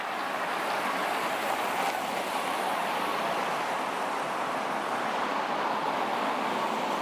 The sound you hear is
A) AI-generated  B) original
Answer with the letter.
A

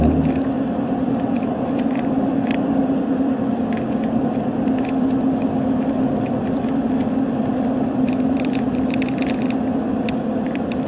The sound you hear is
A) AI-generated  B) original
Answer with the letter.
A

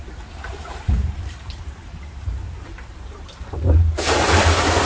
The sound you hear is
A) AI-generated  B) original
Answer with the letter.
A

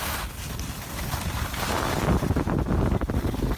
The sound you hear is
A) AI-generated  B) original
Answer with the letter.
B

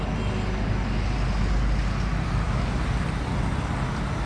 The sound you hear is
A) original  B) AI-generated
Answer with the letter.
A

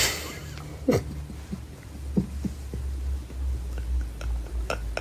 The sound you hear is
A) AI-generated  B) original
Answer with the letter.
B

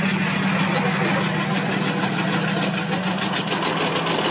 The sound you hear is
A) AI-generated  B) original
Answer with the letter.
B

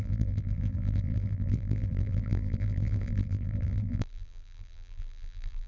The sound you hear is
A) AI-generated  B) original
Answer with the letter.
A